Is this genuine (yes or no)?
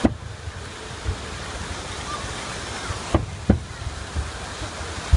yes